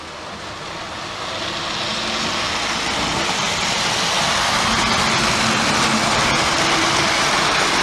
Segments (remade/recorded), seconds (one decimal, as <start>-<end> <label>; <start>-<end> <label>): 0.0-7.8 recorded